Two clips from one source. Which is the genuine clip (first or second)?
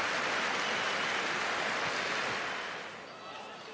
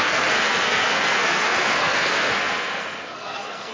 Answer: first